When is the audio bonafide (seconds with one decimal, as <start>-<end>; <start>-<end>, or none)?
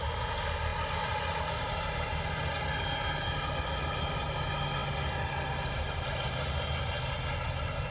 0.0-7.9